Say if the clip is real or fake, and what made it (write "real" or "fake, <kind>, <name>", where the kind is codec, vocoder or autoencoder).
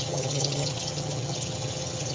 fake, vocoder, HiFi-GAN